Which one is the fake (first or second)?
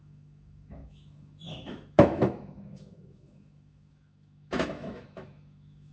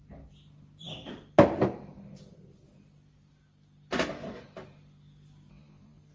first